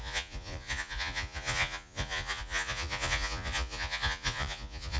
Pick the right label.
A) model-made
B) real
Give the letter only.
A